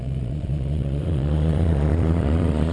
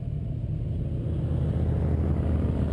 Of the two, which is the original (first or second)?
second